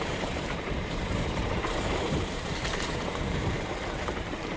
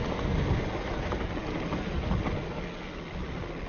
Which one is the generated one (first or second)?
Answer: first